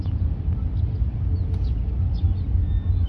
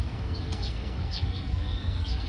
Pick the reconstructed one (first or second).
second